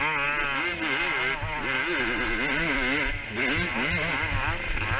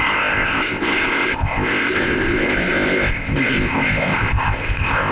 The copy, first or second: second